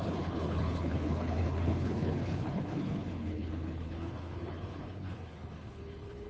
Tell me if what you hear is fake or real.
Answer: fake